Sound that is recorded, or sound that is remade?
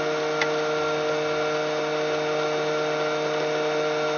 recorded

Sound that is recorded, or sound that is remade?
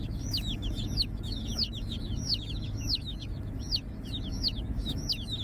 remade